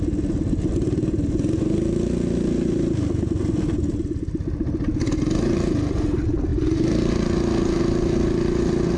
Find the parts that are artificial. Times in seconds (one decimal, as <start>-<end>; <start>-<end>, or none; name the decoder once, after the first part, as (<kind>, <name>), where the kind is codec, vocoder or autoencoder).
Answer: none